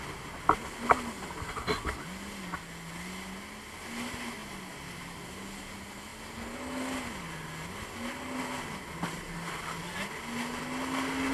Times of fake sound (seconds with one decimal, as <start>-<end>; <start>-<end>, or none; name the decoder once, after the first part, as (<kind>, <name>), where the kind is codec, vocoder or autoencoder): none